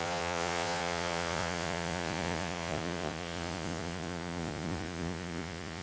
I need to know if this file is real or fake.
fake